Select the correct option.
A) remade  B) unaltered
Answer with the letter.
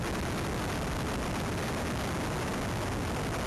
B